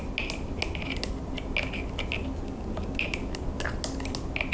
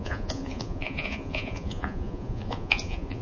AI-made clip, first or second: second